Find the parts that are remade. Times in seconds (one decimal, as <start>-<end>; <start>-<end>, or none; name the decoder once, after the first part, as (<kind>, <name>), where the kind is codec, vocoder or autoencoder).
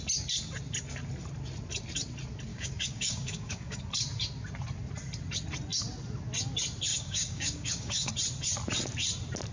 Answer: 2.5-3.8 (codec, DAC); 6.9-8.1